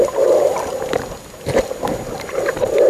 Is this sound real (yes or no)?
yes